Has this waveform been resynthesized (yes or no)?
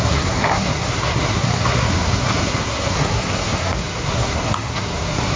yes